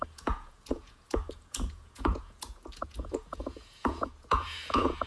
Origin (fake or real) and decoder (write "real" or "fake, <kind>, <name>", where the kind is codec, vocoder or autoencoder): fake, vocoder, Vocos